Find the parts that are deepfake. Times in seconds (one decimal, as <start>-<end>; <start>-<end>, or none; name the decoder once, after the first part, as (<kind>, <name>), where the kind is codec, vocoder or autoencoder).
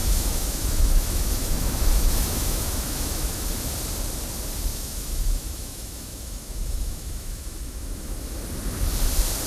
0.0-3.5 (autoencoder, DAC-VAE); 4.7-8.4